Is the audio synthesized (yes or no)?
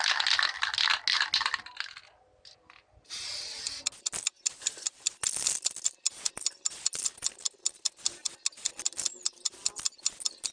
no